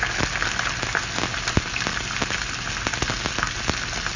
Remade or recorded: recorded